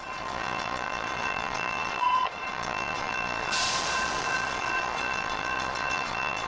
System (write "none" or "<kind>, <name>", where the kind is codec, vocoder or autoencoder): vocoder, Vocos